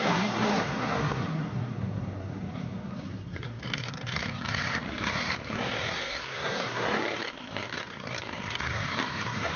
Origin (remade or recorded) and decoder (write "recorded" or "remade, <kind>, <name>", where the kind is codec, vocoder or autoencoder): remade, codec, SNAC